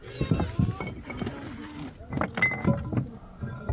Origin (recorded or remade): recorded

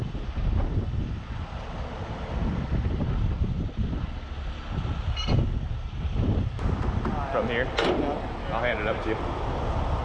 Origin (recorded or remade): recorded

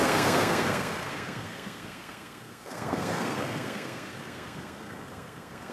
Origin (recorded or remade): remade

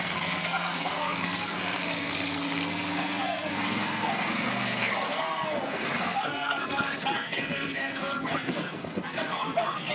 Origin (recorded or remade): remade